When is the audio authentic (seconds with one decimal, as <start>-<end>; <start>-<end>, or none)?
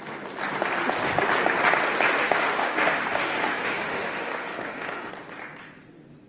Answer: 0.0-2.2; 5.1-6.3